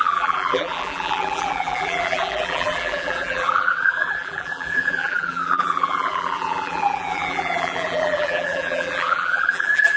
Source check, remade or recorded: remade